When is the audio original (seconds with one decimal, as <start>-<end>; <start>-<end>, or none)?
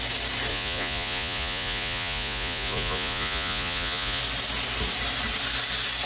0.0-0.5; 4.2-6.1